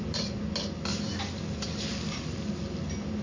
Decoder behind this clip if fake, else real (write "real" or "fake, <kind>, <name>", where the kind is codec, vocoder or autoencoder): real